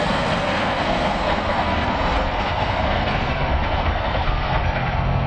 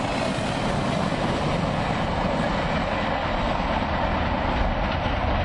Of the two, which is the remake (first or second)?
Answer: first